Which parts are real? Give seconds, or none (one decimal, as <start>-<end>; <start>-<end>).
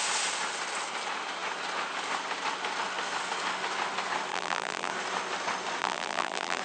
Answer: 0.0-4.3; 4.9-5.8